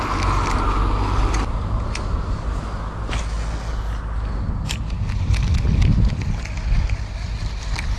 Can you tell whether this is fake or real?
real